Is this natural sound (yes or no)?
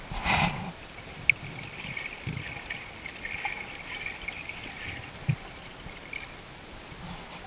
yes